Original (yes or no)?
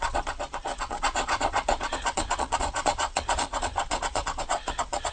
no